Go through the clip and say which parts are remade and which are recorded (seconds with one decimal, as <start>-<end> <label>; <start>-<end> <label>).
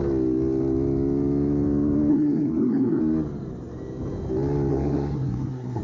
0.0-2.1 recorded; 2.1-3.0 remade; 3.0-4.7 recorded; 4.7-5.8 remade